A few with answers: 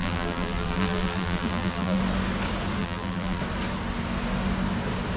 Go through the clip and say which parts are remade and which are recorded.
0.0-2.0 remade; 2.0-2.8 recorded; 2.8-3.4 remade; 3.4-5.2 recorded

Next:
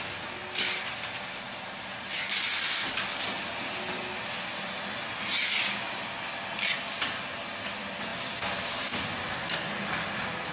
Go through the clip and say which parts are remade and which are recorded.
0.0-10.5 recorded

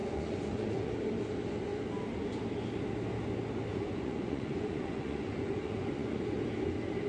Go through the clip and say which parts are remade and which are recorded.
0.0-0.9 remade; 0.9-3.7 recorded; 3.7-6.4 remade; 6.4-7.1 recorded

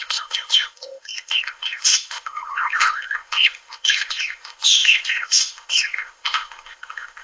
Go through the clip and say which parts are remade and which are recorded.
0.0-7.2 remade

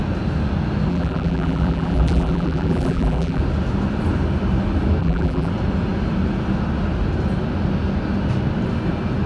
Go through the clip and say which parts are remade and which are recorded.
0.0-0.9 recorded; 0.9-3.4 remade; 3.4-5.0 recorded; 5.0-5.5 remade; 5.5-9.3 recorded

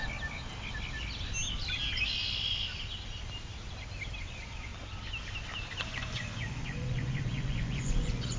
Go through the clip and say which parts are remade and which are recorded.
0.0-4.2 recorded; 4.2-4.7 remade; 4.7-5.8 recorded; 5.8-8.4 remade

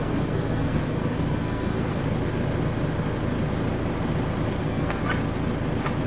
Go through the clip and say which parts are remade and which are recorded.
0.0-2.0 remade; 2.0-4.6 recorded; 4.6-5.0 remade; 5.0-6.1 recorded

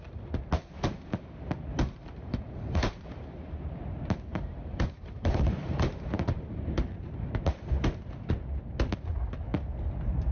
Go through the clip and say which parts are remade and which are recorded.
0.0-2.0 recorded; 2.0-3.3 remade; 3.3-4.3 recorded; 4.3-5.8 remade; 5.8-10.3 recorded